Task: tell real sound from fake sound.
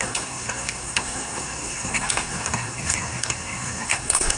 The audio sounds fake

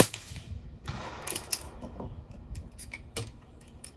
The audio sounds fake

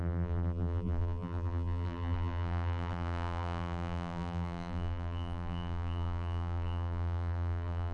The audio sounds fake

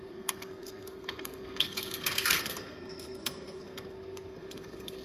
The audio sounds fake